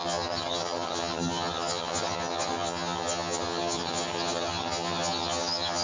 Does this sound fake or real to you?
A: fake